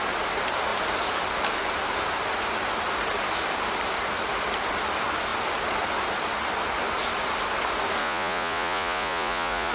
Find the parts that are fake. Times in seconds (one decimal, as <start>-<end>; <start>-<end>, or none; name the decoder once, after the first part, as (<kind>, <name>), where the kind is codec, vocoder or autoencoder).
8.0-9.7 (vocoder, Vocos)